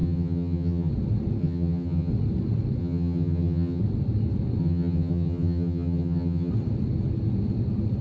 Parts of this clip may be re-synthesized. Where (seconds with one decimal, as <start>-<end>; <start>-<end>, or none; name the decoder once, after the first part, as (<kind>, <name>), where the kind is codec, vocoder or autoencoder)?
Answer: 0.0-0.9 (vocoder, HiFi-GAN); 1.4-2.1; 2.8-3.8; 4.6-6.5